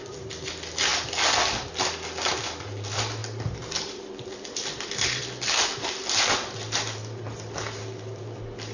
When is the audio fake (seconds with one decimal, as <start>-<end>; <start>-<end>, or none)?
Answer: none